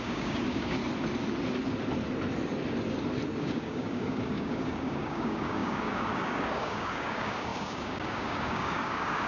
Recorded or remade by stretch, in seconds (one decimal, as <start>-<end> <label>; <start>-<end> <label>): 0.0-0.8 remade; 0.8-3.4 recorded; 3.4-9.3 remade